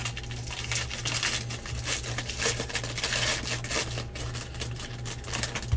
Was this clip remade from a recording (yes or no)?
no